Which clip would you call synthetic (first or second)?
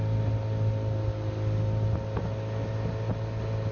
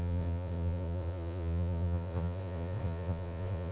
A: second